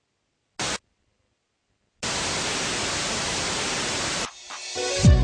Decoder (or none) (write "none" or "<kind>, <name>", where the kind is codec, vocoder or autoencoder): none